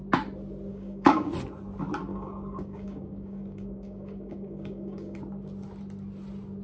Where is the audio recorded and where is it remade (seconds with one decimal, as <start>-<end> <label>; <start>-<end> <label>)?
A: 0.0-0.7 recorded; 0.7-1.3 remade; 1.3-2.1 recorded; 2.1-5.2 remade; 5.2-6.6 recorded